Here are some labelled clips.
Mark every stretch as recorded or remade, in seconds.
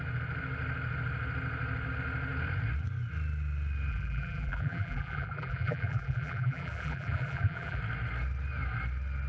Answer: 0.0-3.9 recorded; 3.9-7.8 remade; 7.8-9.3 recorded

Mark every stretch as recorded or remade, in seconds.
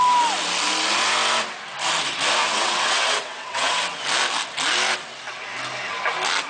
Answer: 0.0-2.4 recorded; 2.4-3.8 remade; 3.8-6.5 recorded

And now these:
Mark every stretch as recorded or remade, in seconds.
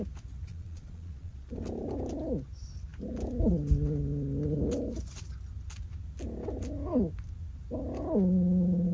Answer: 0.0-0.5 recorded; 0.5-1.5 remade; 1.5-8.9 recorded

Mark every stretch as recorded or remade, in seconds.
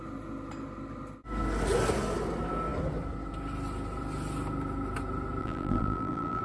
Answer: 0.0-5.4 recorded; 5.4-6.4 remade